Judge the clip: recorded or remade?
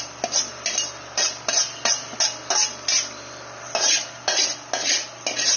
recorded